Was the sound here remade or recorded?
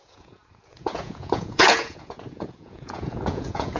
remade